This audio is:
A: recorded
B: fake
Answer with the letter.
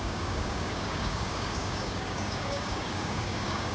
B